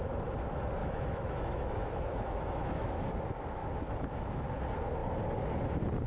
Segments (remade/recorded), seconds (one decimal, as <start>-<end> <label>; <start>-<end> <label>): 0.0-0.8 recorded; 0.8-3.1 remade; 3.1-3.6 recorded; 3.6-4.4 remade; 4.4-6.1 recorded